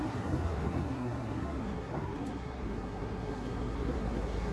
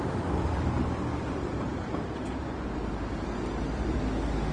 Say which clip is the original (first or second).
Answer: second